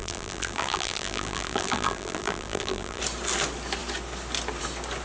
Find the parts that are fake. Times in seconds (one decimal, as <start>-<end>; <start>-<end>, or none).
0.0-3.0